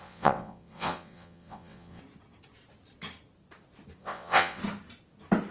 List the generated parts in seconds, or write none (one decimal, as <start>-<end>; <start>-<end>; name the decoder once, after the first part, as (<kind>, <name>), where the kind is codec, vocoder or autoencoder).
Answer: 0.0-2.0 (vocoder, WaveNeXt); 4.0-4.6